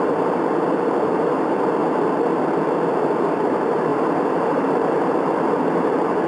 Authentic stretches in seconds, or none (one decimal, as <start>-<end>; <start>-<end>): 1.8-2.9